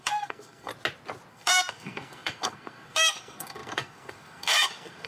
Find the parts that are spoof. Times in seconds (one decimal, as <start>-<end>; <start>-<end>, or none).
0.0-0.7; 1.3-5.1